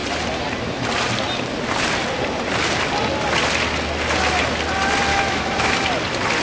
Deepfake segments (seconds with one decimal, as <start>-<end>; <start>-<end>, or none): 5.1-5.7